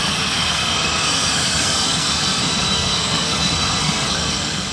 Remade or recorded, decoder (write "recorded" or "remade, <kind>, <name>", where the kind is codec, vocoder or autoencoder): remade, codec, SNAC